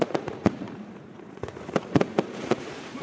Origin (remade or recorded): remade